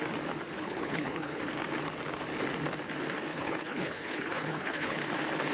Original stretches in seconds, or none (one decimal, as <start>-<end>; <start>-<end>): 0.0-0.6; 1.4-3.3; 5.0-5.5